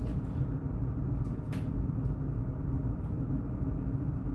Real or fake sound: real